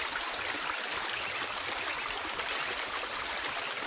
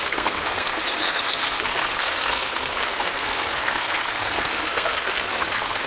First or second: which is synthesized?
second